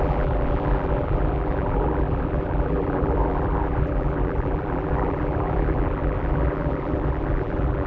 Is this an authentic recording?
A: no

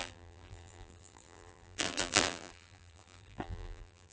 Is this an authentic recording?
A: no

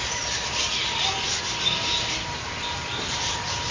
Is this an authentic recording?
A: yes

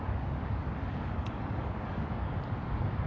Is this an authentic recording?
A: no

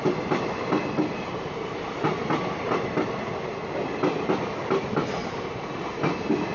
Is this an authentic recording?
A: yes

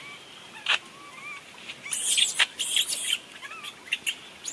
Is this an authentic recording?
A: yes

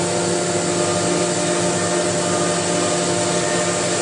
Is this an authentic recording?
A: yes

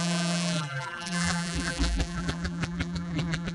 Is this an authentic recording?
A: no